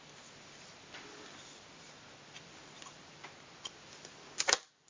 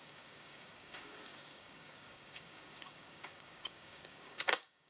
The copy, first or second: second